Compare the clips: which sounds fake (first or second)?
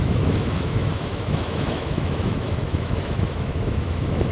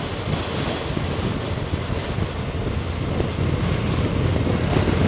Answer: first